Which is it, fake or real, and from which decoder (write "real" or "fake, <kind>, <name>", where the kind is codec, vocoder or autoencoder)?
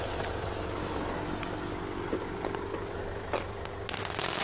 real